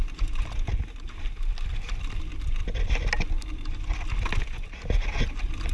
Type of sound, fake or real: real